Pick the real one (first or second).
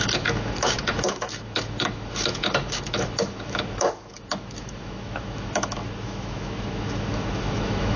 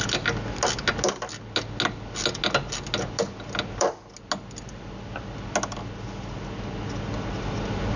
second